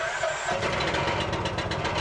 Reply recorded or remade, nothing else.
recorded